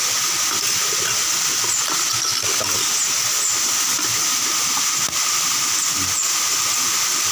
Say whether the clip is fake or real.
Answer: real